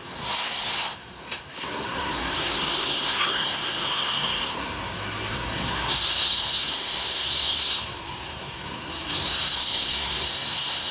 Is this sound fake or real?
fake